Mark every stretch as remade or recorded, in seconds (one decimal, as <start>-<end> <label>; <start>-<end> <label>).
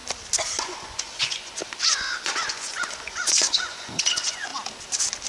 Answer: 0.0-0.6 recorded; 0.6-1.6 remade; 1.6-2.2 recorded; 2.2-4.5 remade; 4.5-5.3 recorded